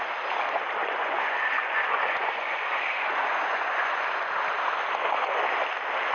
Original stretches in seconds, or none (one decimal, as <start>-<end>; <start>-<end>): 0.0-0.8; 4.3-6.1